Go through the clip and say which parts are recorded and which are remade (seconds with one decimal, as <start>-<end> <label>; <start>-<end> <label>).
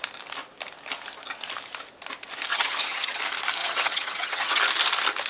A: 0.0-2.5 recorded; 2.5-3.2 remade; 3.2-3.6 recorded; 3.6-4.6 remade; 4.6-5.3 recorded